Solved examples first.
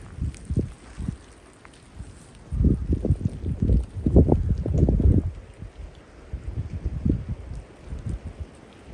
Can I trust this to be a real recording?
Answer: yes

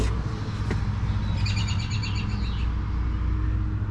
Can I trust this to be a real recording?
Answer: yes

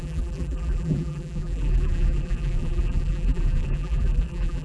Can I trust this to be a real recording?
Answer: no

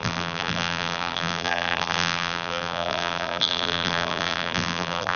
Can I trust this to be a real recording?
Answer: no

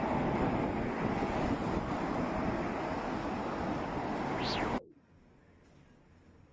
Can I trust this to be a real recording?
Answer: yes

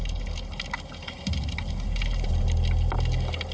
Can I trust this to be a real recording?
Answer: yes